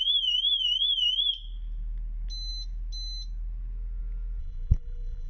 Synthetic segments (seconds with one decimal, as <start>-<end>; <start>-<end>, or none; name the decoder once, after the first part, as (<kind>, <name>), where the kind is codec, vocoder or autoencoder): 4.4-5.3 (vocoder, BigVGAN v2)